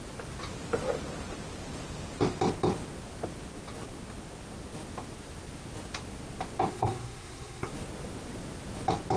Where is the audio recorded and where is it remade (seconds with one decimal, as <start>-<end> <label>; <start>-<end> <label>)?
0.0-6.7 recorded; 6.7-7.7 remade; 7.7-9.2 recorded